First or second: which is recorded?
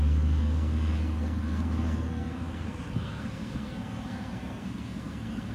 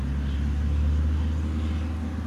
second